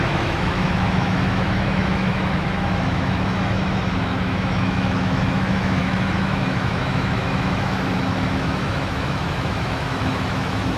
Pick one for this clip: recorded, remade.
remade